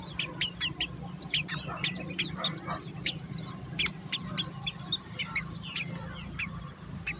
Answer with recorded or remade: recorded